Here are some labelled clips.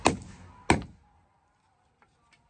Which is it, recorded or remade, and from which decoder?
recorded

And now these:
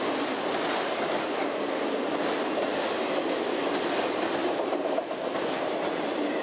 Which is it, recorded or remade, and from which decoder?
recorded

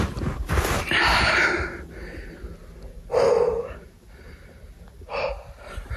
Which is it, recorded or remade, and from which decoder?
recorded